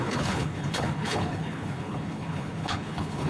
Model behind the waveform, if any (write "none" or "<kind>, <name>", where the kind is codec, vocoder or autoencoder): codec, HILCodec